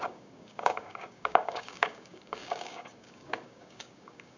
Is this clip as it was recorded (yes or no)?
no